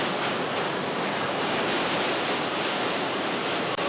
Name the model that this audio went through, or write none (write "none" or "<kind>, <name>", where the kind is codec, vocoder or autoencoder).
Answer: none